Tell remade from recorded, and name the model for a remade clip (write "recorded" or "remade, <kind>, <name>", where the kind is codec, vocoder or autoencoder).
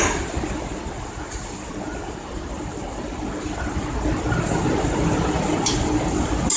recorded